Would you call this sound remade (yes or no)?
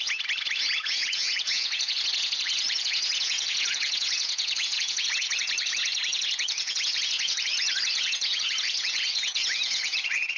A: yes